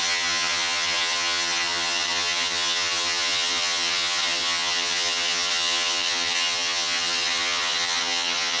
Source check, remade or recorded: remade